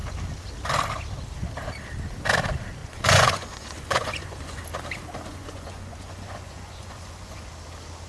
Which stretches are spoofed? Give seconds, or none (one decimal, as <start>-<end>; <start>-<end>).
2.8-4.6; 5.3-7.5